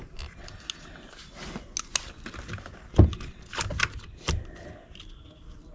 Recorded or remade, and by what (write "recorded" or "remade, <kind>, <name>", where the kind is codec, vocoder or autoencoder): recorded